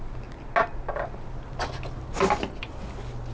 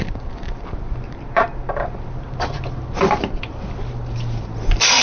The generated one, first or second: second